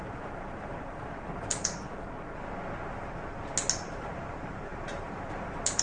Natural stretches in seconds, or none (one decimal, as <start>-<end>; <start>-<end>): 1.9-3.8